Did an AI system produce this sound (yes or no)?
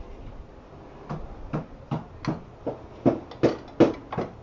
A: no